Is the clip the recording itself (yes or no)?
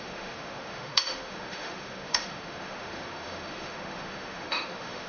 no